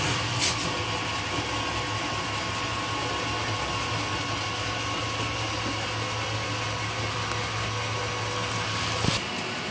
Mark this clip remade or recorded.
recorded